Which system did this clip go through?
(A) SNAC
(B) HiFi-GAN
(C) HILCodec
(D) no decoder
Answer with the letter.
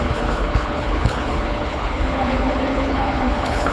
C